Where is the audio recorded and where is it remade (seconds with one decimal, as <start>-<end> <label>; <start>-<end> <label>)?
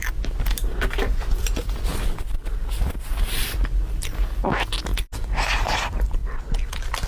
0.0-1.9 remade; 1.9-3.4 recorded; 3.4-4.9 remade; 4.9-5.6 recorded; 5.6-6.2 remade; 6.2-7.1 recorded